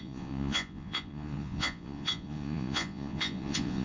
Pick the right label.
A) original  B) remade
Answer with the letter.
B